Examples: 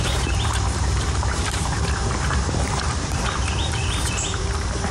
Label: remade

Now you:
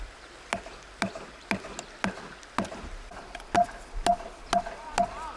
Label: recorded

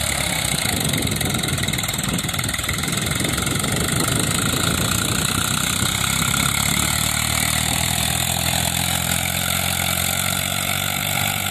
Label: remade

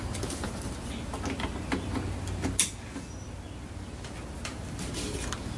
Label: recorded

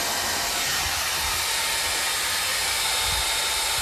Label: recorded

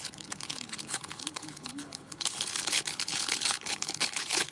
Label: remade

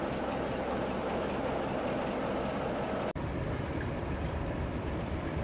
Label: remade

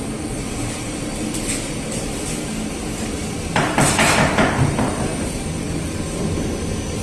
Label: recorded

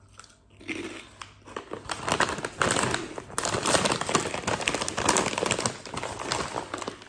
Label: recorded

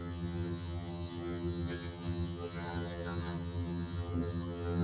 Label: remade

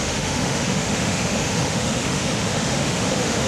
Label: remade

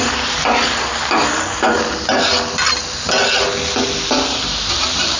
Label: recorded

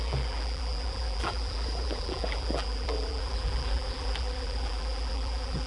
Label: remade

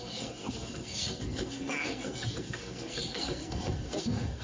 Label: remade